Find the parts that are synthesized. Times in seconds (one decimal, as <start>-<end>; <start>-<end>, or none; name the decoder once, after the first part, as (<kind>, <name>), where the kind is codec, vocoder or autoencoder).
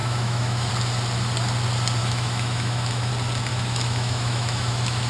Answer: 0.0-0.7 (autoencoder, DAC-VAE); 2.0-3.1; 3.5-5.1